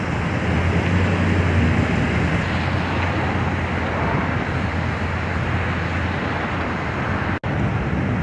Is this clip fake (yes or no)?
no